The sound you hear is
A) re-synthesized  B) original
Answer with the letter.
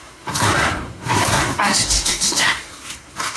A